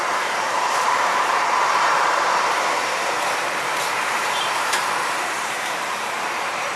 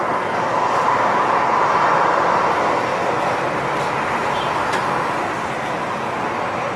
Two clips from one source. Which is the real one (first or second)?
second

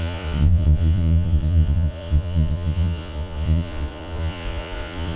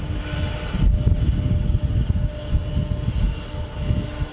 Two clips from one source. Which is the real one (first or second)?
second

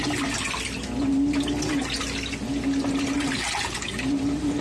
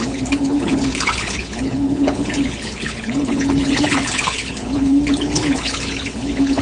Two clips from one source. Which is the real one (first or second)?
first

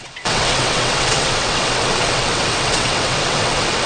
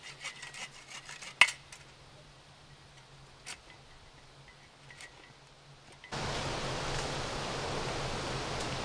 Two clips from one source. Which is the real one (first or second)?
second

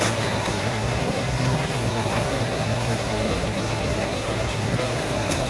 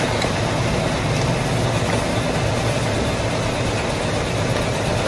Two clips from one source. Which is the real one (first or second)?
second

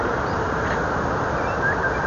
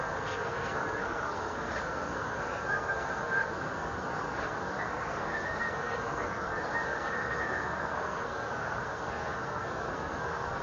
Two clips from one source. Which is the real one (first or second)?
first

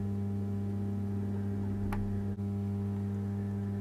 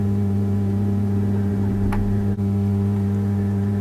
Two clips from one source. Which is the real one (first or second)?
first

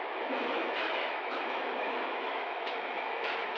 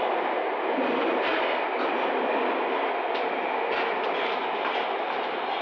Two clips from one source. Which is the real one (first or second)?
second